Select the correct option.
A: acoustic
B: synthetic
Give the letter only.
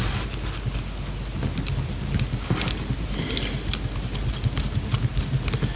A